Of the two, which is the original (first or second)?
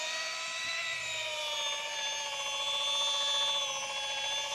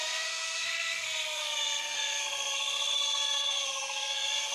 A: first